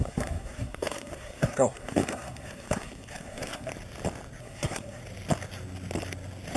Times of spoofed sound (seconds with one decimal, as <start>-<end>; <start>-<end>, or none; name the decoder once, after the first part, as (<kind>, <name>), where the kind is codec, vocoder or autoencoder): 0.0-3.7 (codec, SNAC); 4.4-5.0